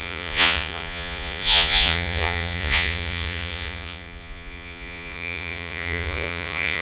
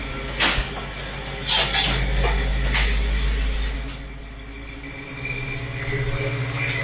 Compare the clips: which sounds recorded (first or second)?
second